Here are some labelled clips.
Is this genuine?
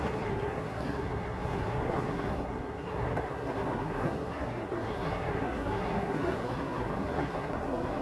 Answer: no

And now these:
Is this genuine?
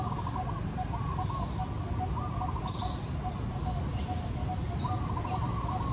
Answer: yes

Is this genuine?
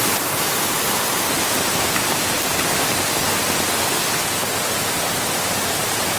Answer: yes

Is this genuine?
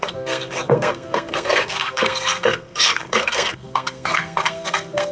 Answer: no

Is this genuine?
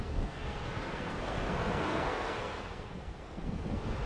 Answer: no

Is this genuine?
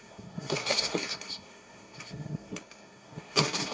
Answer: no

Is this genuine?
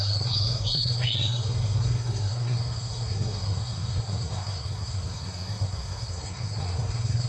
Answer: no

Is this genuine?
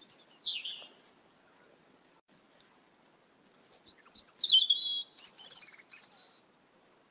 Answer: yes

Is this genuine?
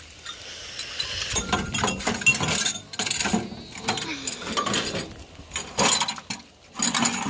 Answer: yes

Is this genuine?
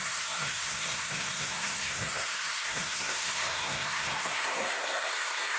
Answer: no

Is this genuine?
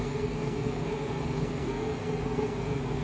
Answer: no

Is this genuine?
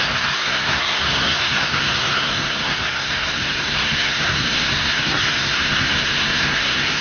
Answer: no